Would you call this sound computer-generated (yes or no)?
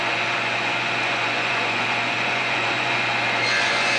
yes